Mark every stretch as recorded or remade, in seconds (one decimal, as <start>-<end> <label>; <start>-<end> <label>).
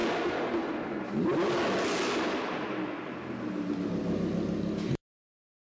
0.0-5.6 recorded